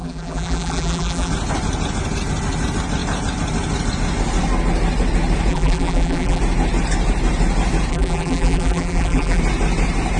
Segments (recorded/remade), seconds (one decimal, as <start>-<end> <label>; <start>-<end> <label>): 0.0-1.3 remade; 1.3-5.5 recorded; 5.5-6.4 remade; 6.4-7.9 recorded; 7.9-9.4 remade; 9.4-10.2 recorded